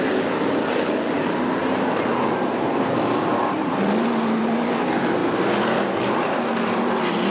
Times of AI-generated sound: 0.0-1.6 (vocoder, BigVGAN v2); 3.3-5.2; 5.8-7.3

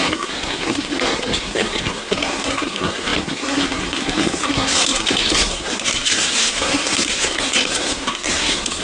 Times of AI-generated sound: 0.0-8.8 (codec, SNAC)

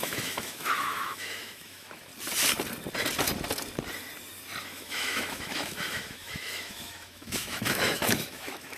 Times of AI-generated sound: 0.0-2.1 (autoencoder, DAC-VAE); 4.6-8.8

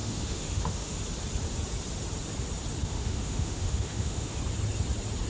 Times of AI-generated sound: 0.0-1.0 (autoencoder, DAC-VAE); 2.8-4.4